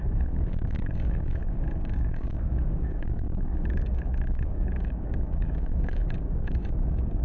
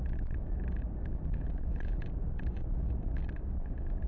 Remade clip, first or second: first